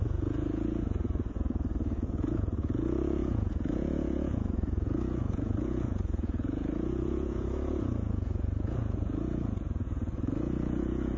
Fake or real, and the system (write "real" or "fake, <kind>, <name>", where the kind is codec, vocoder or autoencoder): fake, vocoder, Vocos